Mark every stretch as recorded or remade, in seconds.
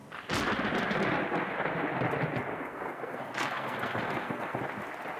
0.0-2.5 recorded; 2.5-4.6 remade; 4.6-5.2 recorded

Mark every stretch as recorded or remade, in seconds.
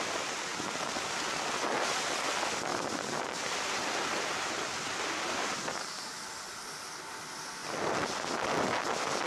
0.0-9.3 recorded